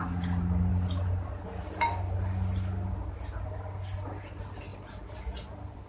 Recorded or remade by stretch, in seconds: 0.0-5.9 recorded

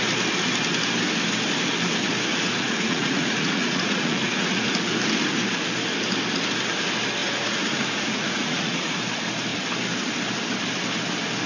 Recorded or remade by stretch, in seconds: 0.0-2.3 recorded; 2.3-4.7 remade; 4.7-7.2 recorded; 7.2-9.0 remade; 9.0-11.5 recorded

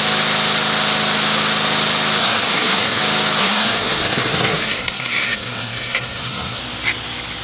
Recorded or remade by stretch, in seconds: 0.0-2.2 recorded; 2.2-3.0 remade; 3.0-3.4 recorded; 3.4-6.6 remade; 6.6-7.4 recorded

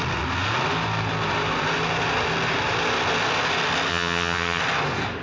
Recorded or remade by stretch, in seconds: 0.0-3.9 recorded; 3.9-4.6 remade; 4.6-5.2 recorded

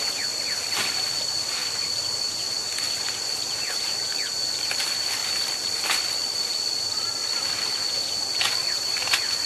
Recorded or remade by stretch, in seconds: 0.0-5.2 recorded; 5.2-5.8 remade; 5.8-6.2 recorded; 6.2-6.9 remade; 6.9-9.5 recorded